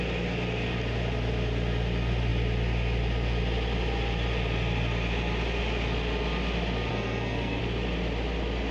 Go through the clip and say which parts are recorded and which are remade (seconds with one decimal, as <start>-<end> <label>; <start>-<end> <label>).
0.0-6.9 recorded; 6.9-7.6 remade; 7.6-8.7 recorded